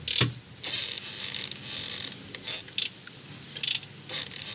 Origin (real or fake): real